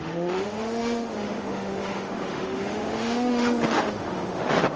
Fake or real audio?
fake